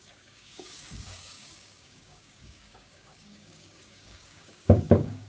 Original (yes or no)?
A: no